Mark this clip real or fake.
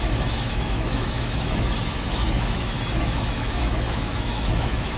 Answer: fake